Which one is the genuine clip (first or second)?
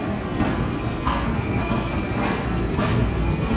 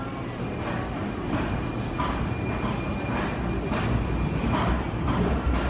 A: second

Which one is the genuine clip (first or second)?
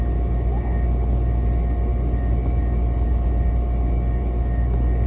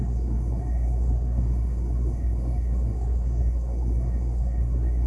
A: first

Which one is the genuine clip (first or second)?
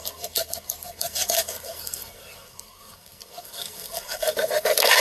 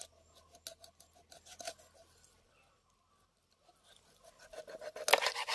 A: second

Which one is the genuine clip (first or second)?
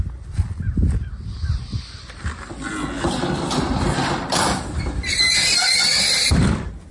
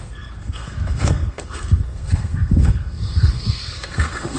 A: first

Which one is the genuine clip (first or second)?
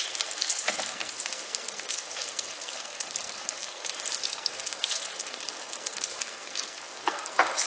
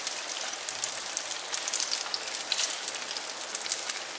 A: second